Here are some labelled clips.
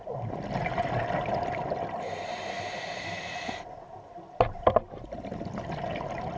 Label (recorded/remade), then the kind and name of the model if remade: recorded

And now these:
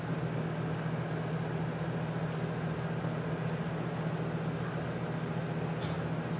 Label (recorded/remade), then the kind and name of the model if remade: recorded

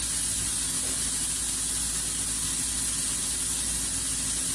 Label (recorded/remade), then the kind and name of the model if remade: recorded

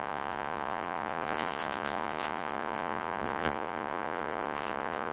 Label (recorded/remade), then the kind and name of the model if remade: remade, vocoder, Vocos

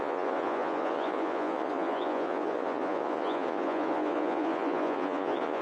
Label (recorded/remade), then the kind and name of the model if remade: remade, vocoder, Vocos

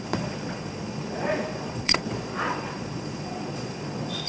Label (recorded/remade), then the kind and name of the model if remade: remade, vocoder, Vocos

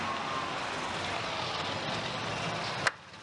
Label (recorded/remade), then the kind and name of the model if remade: recorded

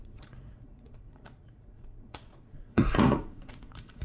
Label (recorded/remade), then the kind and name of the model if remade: remade, vocoder, Vocos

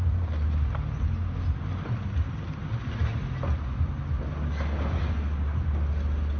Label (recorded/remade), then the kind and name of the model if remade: recorded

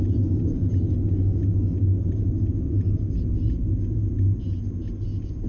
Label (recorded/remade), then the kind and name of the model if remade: recorded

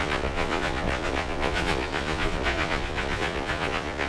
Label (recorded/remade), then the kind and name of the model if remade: remade, vocoder, Vocos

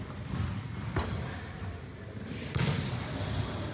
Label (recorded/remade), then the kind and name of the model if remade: recorded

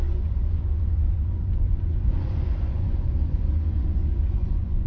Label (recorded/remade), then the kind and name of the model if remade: remade, vocoder, Vocos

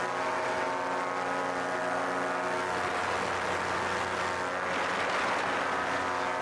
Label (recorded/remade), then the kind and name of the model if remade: recorded